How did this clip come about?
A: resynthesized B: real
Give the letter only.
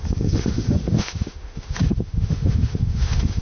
A